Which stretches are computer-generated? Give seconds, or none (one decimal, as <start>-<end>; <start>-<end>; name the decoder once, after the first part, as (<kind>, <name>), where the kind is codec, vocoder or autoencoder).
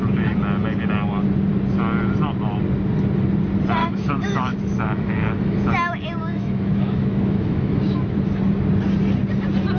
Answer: 3.8-5.7 (autoencoder, DAC-VAE); 6.2-8.4